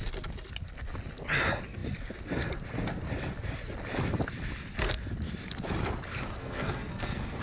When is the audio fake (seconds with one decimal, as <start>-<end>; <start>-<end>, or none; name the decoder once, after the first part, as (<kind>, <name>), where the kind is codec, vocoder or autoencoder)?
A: 6.4-7.4 (codec, SNAC)